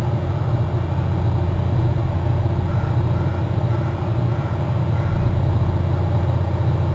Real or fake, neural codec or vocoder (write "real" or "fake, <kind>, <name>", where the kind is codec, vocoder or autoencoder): real